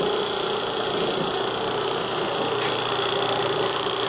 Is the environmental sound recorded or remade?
recorded